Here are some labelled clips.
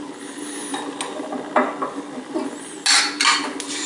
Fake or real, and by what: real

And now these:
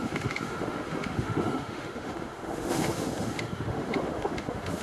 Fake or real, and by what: fake, autoencoder, DAC-VAE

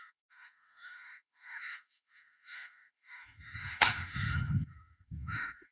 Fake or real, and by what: fake, autoencoder, DAC-VAE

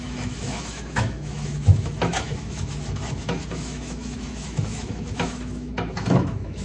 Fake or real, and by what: fake, autoencoder, DAC-VAE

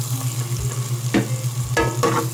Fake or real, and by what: real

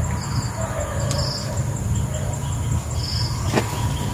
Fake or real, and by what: real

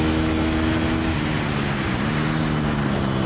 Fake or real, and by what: real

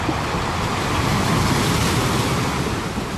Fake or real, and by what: real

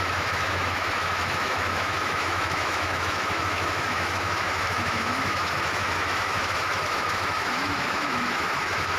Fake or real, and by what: fake, autoencoder, DAC-VAE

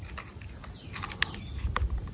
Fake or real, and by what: real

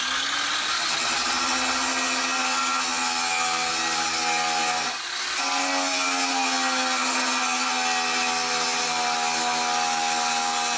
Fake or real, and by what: real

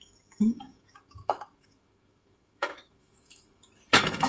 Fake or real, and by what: fake, autoencoder, DAC-VAE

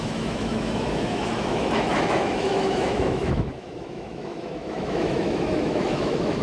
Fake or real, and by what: fake, autoencoder, DAC-VAE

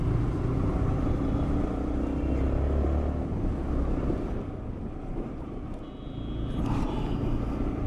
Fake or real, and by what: real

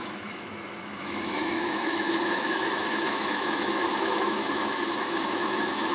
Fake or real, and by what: fake, autoencoder, DAC-VAE